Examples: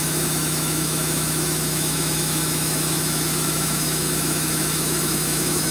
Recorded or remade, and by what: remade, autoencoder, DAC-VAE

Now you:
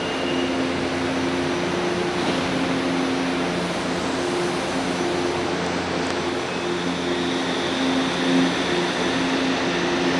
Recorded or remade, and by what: recorded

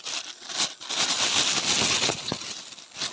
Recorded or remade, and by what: recorded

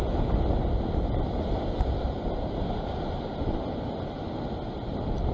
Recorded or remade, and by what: recorded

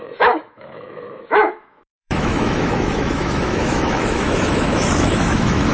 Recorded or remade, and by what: remade, autoencoder, DAC-VAE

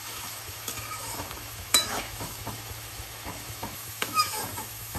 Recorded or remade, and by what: remade, autoencoder, DAC-VAE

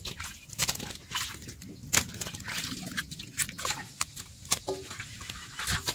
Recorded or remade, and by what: recorded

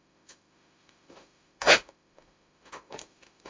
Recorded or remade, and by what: remade, autoencoder, DAC-VAE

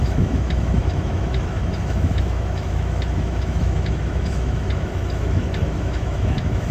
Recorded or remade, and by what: remade, autoencoder, DAC-VAE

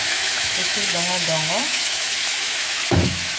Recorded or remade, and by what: remade, autoencoder, DAC-VAE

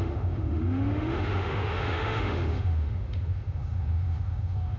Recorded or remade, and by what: remade, autoencoder, DAC-VAE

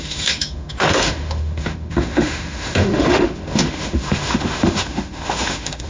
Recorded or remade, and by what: remade, autoencoder, DAC-VAE